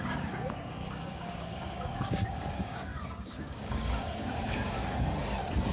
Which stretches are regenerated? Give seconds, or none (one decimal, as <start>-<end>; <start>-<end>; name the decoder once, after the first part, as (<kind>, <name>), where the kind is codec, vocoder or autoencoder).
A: 0.0-4.8 (codec, DAC)